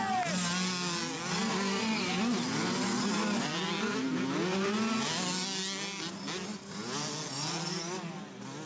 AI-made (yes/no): no